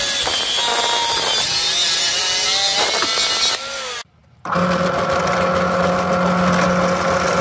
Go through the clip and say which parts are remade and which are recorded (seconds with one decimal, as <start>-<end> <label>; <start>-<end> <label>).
0.0-7.4 recorded